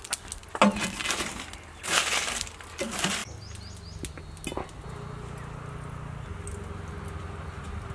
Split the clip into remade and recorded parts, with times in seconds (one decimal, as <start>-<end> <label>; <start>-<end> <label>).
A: 0.0-7.9 recorded